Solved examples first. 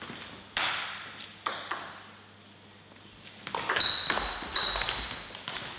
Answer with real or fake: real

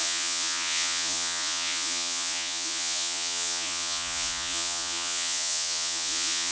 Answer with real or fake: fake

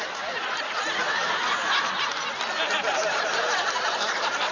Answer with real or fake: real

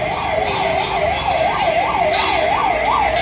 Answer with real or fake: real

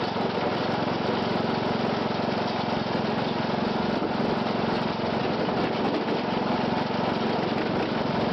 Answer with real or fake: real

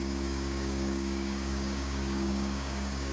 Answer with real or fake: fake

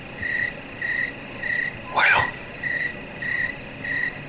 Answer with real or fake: real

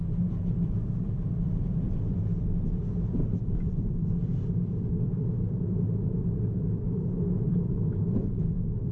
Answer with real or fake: fake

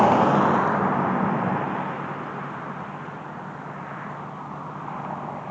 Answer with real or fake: real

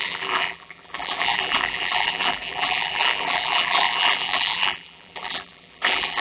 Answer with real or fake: fake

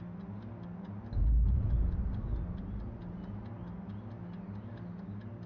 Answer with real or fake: real